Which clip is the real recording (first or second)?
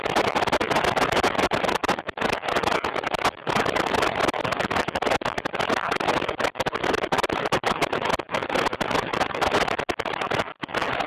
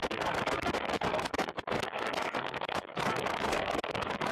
first